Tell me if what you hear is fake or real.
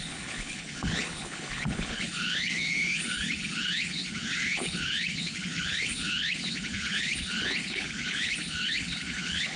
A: fake